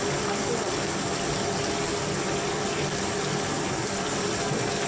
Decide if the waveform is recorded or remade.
recorded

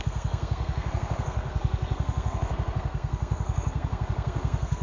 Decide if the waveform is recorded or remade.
remade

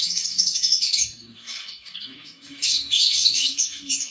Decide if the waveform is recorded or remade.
remade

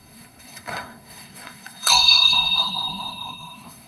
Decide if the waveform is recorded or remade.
remade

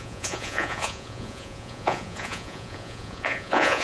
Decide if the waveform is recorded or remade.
remade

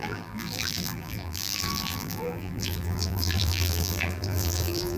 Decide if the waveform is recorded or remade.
remade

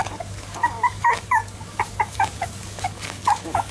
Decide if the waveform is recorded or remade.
remade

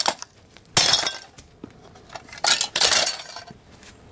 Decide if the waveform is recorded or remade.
recorded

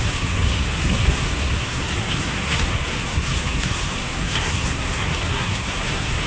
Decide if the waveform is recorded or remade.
remade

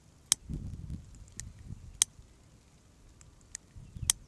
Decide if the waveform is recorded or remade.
recorded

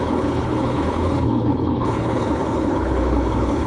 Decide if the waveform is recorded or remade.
remade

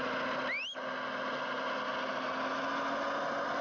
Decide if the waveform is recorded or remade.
recorded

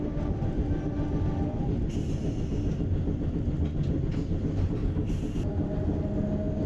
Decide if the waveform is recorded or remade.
recorded